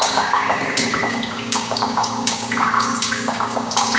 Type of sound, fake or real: fake